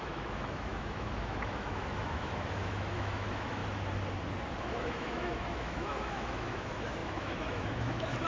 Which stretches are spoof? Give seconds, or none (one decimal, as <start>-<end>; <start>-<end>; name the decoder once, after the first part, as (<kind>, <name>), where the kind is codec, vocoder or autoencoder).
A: 0.0-3.6 (autoencoder, DAC-VAE); 4.6-8.3